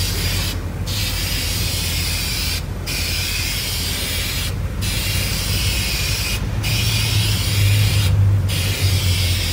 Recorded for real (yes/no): yes